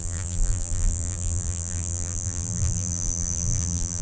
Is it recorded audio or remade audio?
remade